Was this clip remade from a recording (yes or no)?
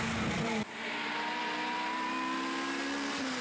no